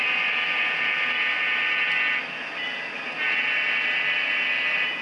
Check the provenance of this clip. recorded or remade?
recorded